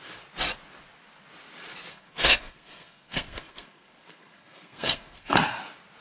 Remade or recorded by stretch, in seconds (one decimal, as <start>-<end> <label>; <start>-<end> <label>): 0.0-1.9 recorded; 1.9-5.5 remade; 5.5-6.0 recorded